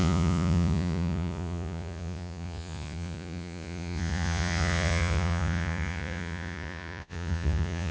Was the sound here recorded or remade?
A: remade